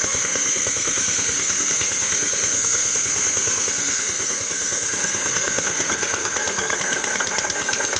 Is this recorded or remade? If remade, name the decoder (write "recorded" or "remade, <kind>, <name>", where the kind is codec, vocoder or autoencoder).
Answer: remade, codec, SNAC